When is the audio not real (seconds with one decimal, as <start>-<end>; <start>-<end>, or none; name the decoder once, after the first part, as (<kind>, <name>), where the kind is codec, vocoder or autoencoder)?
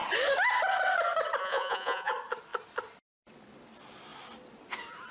1.4-2.1 (vocoder, Vocos)